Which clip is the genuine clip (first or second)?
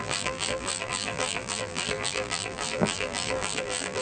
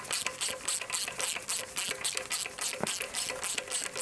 second